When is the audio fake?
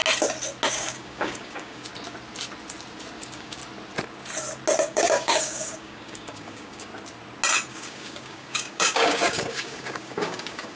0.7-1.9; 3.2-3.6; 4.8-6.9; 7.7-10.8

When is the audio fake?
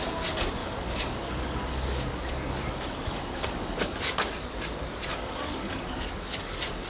0.6-4.3; 5.1-6.9